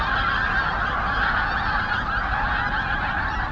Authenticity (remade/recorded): recorded